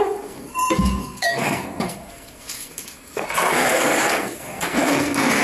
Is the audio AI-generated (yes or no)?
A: yes